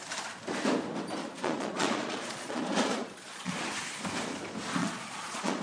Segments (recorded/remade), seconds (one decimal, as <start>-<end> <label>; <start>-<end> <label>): 0.0-1.2 recorded; 1.2-3.5 remade; 3.5-4.8 recorded; 4.8-5.6 remade